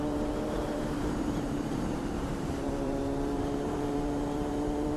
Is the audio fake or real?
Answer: fake